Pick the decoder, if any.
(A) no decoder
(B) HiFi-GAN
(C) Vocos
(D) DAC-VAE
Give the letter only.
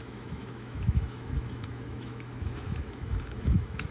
D